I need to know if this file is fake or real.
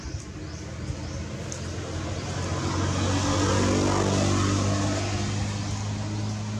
real